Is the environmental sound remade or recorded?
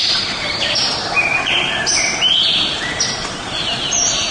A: remade